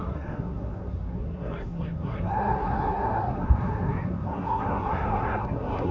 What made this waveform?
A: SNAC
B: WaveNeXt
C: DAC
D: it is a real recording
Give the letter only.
A